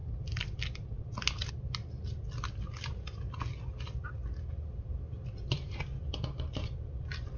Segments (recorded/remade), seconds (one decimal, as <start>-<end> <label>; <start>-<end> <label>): 0.0-7.4 recorded